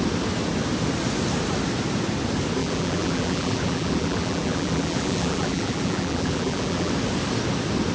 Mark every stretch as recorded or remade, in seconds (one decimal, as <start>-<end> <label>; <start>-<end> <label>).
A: 0.0-2.6 recorded; 2.6-6.9 remade; 6.9-7.9 recorded